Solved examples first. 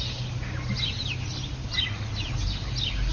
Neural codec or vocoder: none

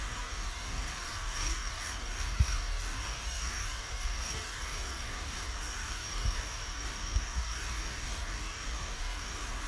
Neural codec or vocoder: codec, DAC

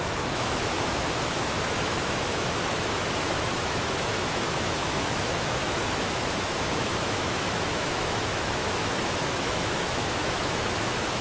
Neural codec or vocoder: autoencoder, DAC-VAE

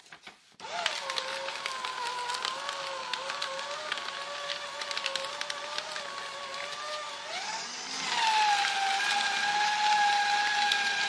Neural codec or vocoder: none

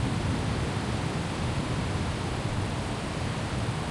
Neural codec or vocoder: none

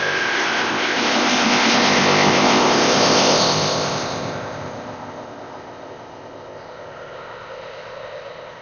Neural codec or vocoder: codec, ZipCodec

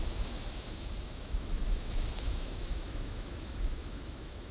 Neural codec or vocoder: autoencoder, DAC-VAE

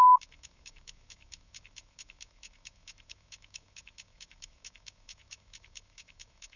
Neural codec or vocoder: autoencoder, DAC-VAE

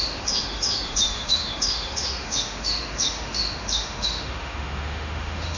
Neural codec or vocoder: autoencoder, DAC-VAE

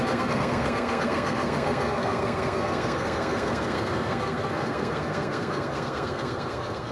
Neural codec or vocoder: codec, SNAC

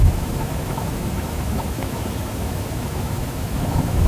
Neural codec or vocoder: autoencoder, DAC-VAE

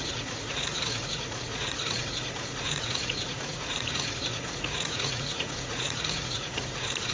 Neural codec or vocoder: vocoder, Vocos